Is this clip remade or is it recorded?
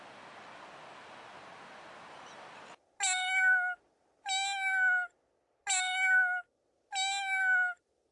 recorded